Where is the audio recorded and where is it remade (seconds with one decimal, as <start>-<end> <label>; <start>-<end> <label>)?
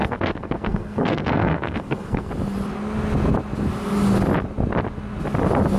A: 0.0-2.3 remade; 2.3-5.8 recorded